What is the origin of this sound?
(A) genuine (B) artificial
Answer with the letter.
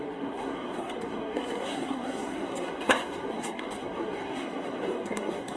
B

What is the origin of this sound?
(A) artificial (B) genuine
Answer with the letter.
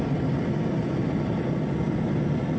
B